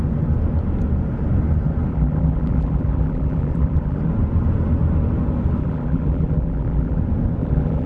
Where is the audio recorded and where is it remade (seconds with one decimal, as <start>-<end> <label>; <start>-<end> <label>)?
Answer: 0.0-1.9 recorded; 1.9-4.0 remade; 4.0-5.6 recorded; 5.6-7.0 remade; 7.0-7.4 recorded; 7.4-7.9 remade